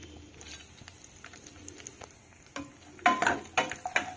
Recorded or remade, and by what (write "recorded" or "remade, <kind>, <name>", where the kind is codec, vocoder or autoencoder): recorded